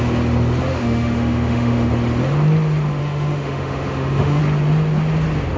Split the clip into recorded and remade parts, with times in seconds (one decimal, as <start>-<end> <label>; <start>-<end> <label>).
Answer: 0.0-0.7 recorded; 0.7-1.9 remade; 1.9-3.0 recorded; 3.0-4.4 remade; 4.4-5.6 recorded